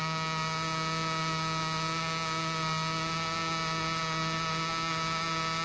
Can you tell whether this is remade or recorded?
recorded